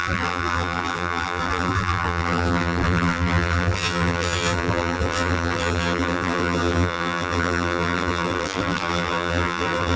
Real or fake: fake